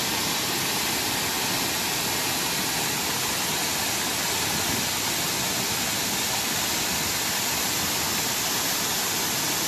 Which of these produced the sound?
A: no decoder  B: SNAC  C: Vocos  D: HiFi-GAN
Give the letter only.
A